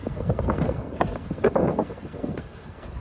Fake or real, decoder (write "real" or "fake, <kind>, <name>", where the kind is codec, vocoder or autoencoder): fake, codec, SNAC